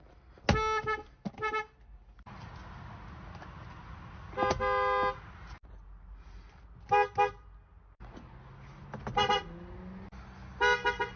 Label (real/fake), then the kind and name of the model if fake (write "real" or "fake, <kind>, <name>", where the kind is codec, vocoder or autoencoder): real